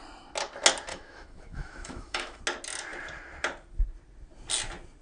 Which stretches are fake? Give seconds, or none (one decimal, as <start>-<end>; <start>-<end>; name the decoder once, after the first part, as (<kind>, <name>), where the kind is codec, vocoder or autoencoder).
0.9-2.4 (autoencoder, DAC-VAE)